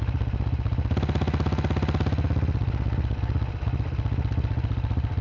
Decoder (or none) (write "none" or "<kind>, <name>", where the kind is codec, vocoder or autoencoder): none